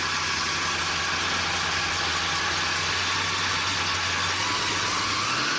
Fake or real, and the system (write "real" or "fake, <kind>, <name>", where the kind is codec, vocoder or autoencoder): real